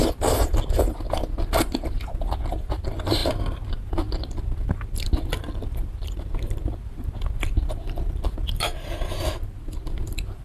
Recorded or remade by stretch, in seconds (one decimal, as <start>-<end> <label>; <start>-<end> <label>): 0.0-10.4 remade